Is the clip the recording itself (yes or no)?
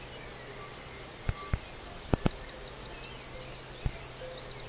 yes